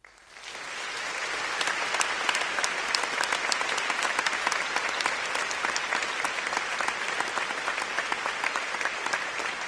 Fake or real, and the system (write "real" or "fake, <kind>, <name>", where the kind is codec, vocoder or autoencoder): real